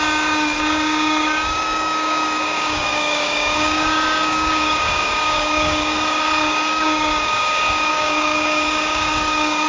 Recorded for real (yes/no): no